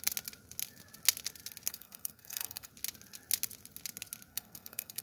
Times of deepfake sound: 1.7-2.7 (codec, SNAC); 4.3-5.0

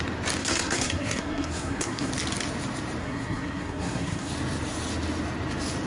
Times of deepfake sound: 0.4-2.1 (codec, SNAC); 3.0-4.3

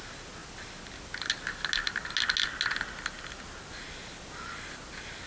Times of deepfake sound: none